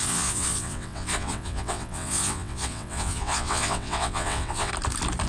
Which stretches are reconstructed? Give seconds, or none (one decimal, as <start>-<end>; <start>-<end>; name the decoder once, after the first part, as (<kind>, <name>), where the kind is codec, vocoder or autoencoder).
0.0-4.7 (vocoder, WaveNeXt)